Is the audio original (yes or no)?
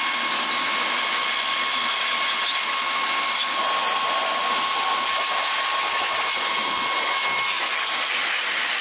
yes